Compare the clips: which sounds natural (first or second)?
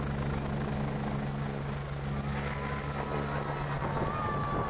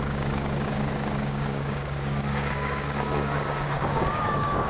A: first